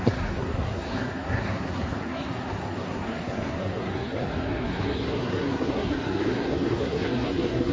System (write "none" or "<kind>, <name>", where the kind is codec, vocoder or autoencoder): codec, SNAC